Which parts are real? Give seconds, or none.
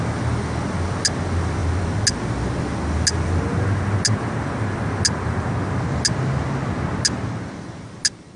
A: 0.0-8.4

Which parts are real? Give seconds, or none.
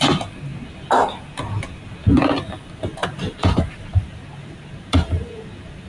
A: 0.0-3.0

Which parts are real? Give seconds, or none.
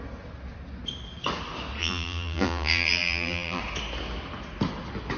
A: 0.0-1.8; 3.6-5.2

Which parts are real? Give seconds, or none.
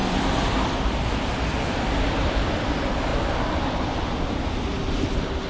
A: 2.7-5.5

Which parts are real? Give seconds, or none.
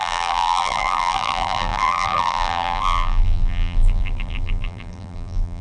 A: none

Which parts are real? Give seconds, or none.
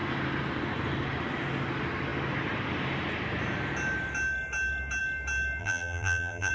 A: 0.0-5.6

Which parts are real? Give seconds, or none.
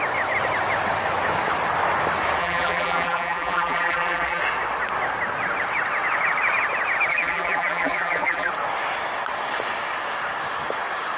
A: 0.0-2.4; 4.4-7.1; 8.5-11.2